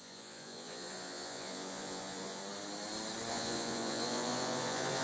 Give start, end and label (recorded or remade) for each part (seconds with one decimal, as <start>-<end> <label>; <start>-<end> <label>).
0.0-2.4 remade; 2.4-3.3 recorded; 3.3-5.0 remade